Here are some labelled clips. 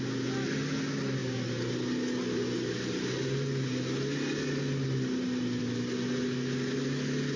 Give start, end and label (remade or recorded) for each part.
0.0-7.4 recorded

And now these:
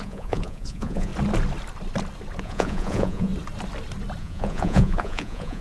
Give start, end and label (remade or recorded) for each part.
0.0-1.1 remade; 1.1-2.4 recorded; 2.4-3.3 remade; 3.3-4.2 recorded; 4.2-5.6 remade

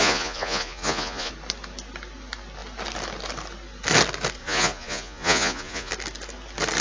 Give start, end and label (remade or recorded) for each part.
0.0-1.3 remade; 1.3-4.4 recorded; 4.4-5.9 remade; 5.9-6.8 recorded

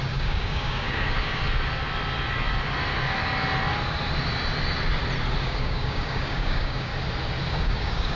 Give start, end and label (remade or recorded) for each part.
0.0-1.4 remade; 1.4-5.4 recorded; 5.4-6.9 remade; 6.9-7.5 recorded; 7.5-8.2 remade

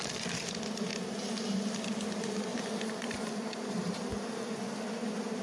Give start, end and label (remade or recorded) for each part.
0.0-5.4 recorded